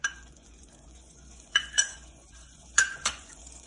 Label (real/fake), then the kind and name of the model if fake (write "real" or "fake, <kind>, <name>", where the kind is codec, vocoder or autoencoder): fake, vocoder, Vocos